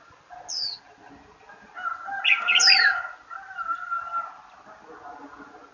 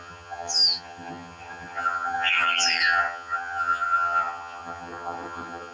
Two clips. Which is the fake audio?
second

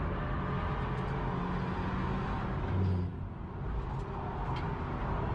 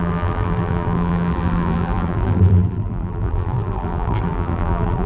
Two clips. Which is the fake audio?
second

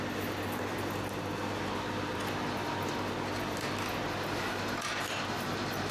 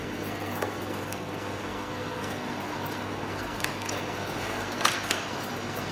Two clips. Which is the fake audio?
second